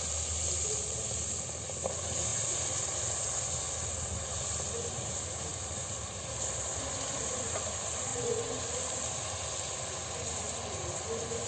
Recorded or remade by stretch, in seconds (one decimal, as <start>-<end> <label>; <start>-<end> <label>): 0.0-8.1 recorded; 8.1-8.6 remade; 8.6-11.5 recorded